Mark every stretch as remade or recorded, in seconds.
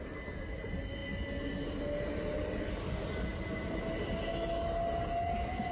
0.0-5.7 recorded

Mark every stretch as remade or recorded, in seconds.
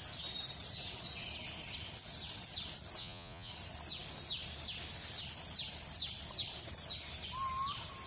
0.0-3.0 recorded; 3.0-3.5 remade; 3.5-8.1 recorded